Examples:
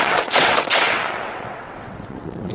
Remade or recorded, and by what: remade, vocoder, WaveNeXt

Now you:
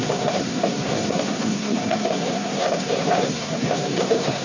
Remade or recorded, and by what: remade, codec, SNAC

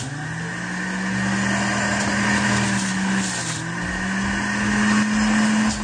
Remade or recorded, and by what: recorded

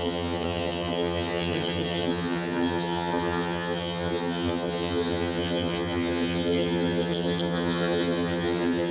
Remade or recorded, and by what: remade, vocoder, HiFi-GAN